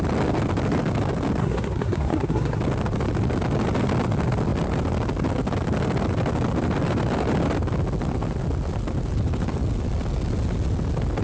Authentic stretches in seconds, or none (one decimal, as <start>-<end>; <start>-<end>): 0.0-1.4; 2.6-11.2